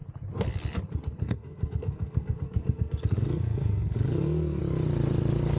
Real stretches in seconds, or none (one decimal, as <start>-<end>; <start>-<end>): 0.0-1.2; 4.6-5.6